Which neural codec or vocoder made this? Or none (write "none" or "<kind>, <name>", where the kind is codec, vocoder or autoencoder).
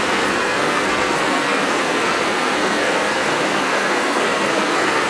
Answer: codec, SNAC